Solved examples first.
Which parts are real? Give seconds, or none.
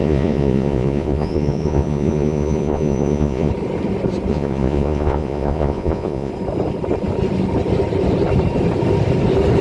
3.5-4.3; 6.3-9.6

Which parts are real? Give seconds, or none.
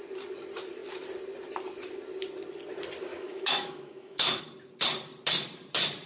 0.0-3.1; 4.4-6.1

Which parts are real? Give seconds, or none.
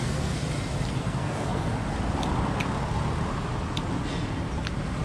0.4-1.0; 1.7-5.0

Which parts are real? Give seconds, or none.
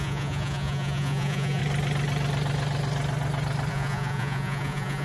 1.6-3.7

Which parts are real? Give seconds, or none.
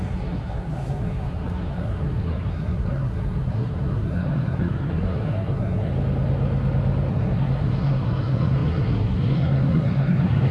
5.9-7.1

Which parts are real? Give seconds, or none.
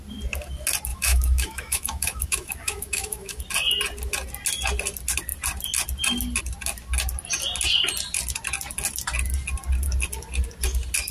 0.0-0.9; 3.4-11.1